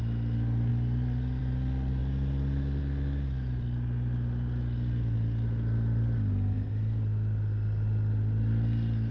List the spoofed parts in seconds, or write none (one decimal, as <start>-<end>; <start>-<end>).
none